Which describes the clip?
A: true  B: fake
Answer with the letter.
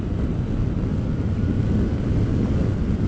A